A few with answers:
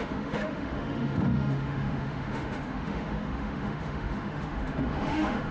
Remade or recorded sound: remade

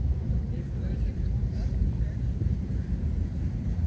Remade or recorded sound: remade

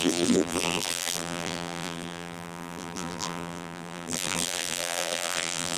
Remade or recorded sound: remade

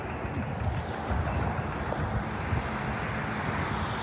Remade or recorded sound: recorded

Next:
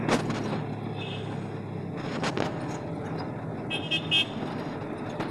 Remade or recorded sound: recorded